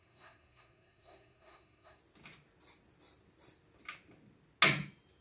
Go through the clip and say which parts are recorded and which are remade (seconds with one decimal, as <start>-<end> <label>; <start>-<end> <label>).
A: 0.0-2.0 remade; 2.0-5.2 recorded